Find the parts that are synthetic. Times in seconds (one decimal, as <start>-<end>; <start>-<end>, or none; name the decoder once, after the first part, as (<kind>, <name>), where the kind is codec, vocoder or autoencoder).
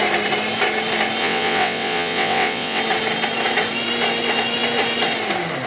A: 1.2-2.8 (vocoder, WaveNeXt)